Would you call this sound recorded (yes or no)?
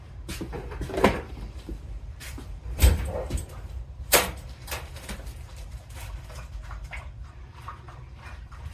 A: no